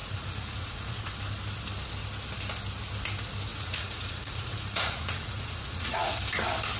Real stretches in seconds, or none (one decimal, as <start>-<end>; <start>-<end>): 1.1-3.5; 6.2-6.8